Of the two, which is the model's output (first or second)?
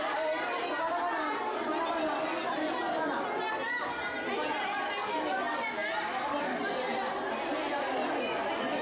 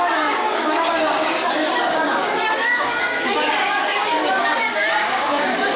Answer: second